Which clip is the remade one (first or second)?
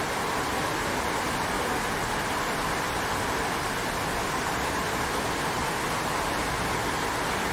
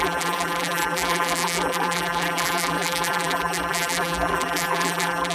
second